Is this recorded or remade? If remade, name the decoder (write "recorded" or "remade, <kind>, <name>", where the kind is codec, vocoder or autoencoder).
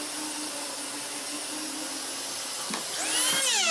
recorded